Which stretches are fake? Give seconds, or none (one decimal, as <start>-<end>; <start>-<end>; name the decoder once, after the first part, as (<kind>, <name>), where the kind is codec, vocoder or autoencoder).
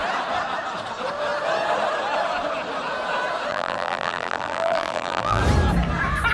3.5-5.4 (vocoder, BigVGAN v2)